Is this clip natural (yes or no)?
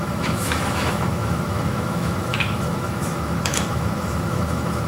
no